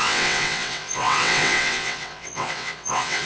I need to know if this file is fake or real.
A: fake